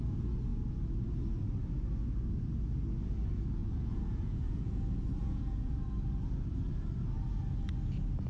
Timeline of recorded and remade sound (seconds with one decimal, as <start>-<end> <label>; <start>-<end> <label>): 0.0-3.6 recorded; 3.6-4.8 remade; 4.8-5.2 recorded; 5.2-5.9 remade; 5.9-8.3 recorded